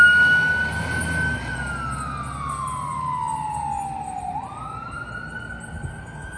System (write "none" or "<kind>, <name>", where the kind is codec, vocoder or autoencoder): none